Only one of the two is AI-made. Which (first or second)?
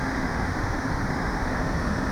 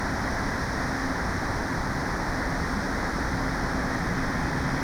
first